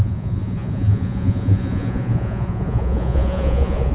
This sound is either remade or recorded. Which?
remade